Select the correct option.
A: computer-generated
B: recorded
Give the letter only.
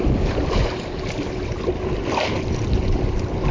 B